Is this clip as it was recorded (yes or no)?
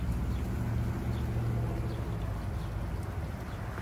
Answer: yes